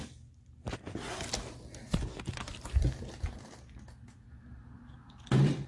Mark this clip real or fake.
real